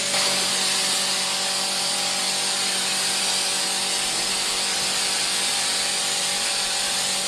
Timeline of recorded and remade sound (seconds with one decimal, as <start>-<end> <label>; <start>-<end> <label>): 0.0-7.3 recorded